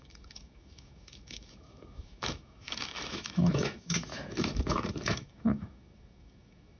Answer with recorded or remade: remade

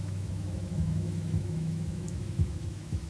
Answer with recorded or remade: remade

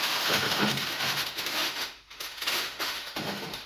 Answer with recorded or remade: remade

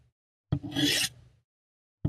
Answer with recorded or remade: recorded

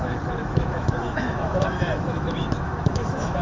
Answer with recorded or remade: remade